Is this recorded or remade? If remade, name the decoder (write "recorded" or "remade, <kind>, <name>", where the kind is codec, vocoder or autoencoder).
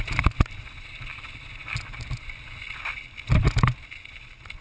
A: recorded